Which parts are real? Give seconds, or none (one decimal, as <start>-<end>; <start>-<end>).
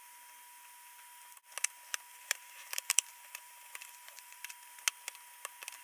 0.0-2.1; 4.4-5.8